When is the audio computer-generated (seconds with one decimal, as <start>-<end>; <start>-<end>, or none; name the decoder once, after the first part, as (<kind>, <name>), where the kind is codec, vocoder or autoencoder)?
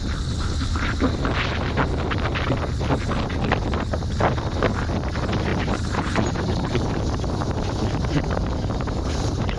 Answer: 5.5-9.6 (vocoder, BigVGAN v2)